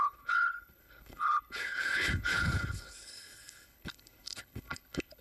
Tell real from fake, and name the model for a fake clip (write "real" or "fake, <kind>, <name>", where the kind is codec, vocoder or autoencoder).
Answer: fake, codec, HILCodec